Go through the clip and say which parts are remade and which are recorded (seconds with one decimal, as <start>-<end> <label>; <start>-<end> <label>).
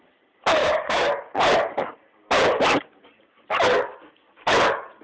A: 0.0-0.6 recorded; 0.6-1.1 remade; 1.1-5.0 recorded